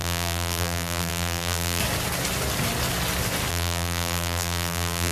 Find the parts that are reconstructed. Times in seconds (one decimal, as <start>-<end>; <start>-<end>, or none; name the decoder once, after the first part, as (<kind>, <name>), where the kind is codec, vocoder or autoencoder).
0.0-1.8 (vocoder, BigVGAN v2); 3.5-5.1